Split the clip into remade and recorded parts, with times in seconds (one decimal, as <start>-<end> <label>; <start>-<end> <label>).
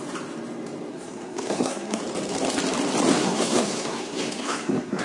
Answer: 0.0-0.9 recorded; 0.9-2.0 remade; 2.0-3.1 recorded; 3.1-5.0 remade